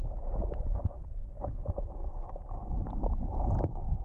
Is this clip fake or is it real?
real